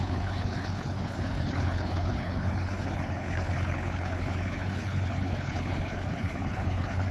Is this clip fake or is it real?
fake